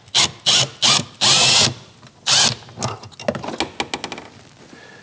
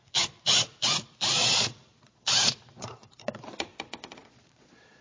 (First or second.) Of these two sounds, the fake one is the second